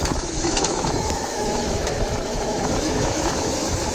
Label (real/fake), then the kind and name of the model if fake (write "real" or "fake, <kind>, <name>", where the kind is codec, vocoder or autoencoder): fake, autoencoder, DAC-VAE